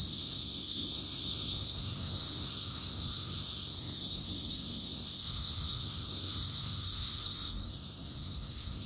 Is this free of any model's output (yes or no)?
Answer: no